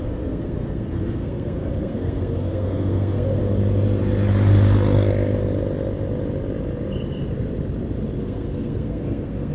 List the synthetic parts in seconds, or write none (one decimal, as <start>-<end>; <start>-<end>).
0.0-3.4; 8.2-9.5